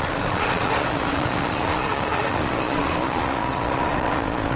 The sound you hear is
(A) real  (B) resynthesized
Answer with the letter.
B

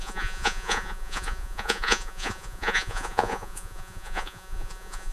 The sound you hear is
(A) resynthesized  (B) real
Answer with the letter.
A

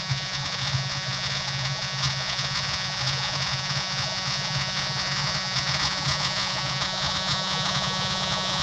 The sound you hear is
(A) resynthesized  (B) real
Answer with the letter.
A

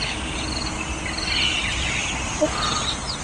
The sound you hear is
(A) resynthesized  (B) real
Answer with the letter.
B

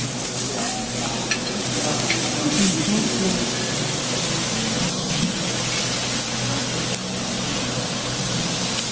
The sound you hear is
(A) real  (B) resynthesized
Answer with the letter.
A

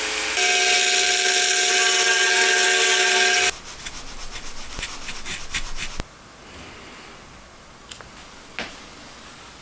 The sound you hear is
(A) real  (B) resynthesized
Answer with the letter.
A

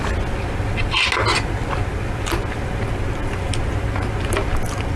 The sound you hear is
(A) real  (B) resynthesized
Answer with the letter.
A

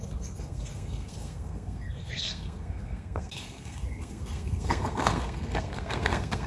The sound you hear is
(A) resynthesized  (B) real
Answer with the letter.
A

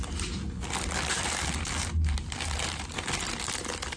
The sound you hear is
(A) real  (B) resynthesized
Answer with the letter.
A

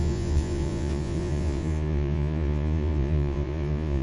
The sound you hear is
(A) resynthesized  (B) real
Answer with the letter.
A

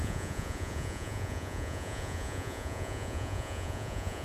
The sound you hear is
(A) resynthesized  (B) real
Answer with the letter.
A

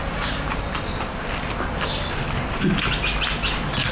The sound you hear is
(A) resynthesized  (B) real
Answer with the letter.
B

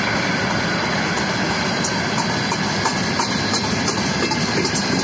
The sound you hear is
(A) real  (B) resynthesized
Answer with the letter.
A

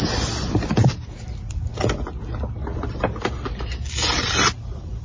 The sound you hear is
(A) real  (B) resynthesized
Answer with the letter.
A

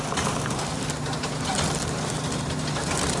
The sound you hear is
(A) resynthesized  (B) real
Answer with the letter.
B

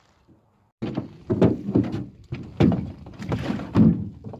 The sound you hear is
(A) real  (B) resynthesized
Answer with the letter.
A